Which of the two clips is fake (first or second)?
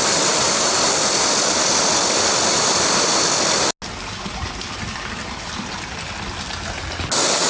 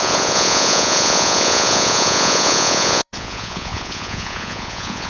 second